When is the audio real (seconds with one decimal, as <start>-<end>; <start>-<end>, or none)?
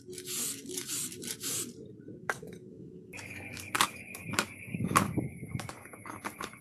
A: 0.0-2.2